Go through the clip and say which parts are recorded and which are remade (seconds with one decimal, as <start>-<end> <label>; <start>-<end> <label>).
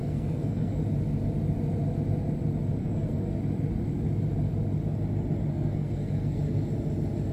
0.0-0.8 remade; 0.8-2.8 recorded; 2.8-3.4 remade; 3.4-5.5 recorded; 5.5-6.4 remade; 6.4-7.3 recorded